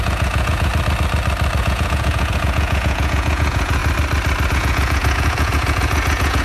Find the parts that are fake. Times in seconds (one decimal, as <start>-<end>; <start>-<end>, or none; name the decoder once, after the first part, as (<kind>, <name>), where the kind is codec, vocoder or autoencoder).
0.0-0.7 (vocoder, Vocos); 1.6-3.8; 4.5-6.4